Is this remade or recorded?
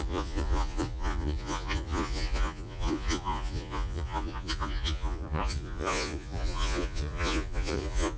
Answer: remade